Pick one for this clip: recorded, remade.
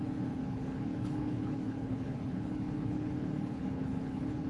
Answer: remade